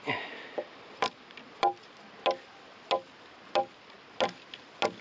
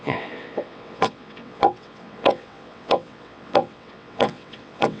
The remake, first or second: second